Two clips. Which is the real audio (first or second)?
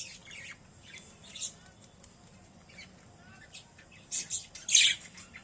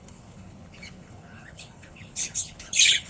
first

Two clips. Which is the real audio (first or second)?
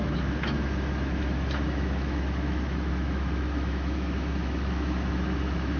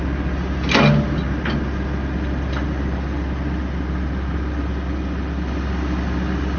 second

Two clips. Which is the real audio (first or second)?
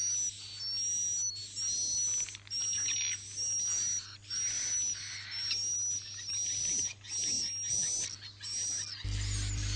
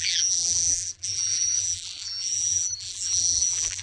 first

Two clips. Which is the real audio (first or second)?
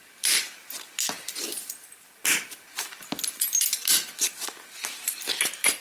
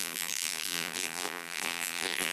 first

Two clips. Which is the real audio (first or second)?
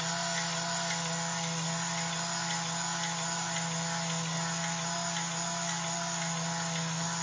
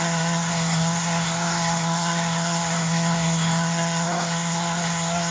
first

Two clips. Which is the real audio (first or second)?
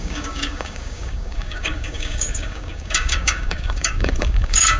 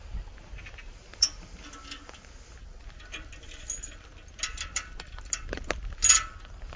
second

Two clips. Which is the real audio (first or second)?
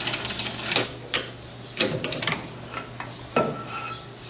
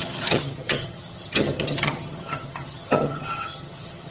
first